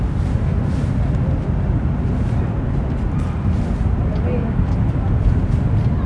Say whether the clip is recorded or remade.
recorded